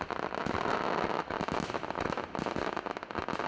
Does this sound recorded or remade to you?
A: recorded